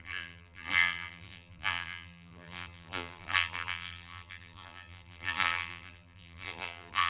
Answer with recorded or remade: remade